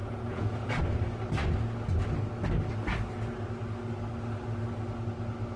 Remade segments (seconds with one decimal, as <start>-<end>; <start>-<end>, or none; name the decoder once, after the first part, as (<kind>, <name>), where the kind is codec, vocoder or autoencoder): 0.0-0.7 (vocoder, Vocos)